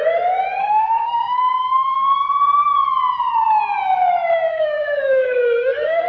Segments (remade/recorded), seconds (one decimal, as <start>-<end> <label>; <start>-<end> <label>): 0.0-0.6 recorded; 0.6-2.1 remade; 2.1-4.5 recorded; 4.5-6.1 remade